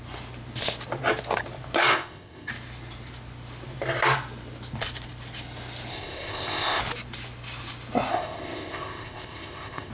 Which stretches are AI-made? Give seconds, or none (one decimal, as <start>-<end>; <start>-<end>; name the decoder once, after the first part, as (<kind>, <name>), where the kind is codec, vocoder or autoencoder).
1.9-2.5 (codec, ZipCodec); 5.9-6.8; 8.1-9.9